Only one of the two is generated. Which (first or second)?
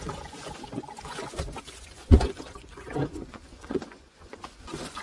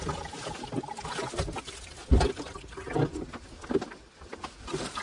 first